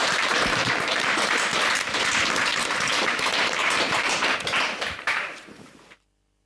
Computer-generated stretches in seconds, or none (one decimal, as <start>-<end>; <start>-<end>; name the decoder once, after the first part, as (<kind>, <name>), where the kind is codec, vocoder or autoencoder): 0.0-1.3 (vocoder, BigVGAN v2); 2.5-5.8